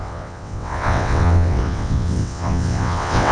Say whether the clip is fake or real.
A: fake